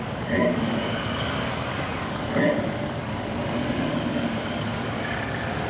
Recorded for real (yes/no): no